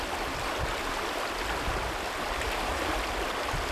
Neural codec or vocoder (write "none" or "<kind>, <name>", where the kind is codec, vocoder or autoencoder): none